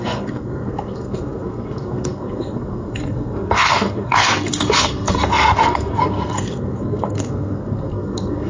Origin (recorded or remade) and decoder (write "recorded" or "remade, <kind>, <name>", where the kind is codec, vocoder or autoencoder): remade, codec, SNAC